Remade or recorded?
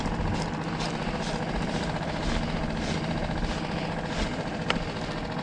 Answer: recorded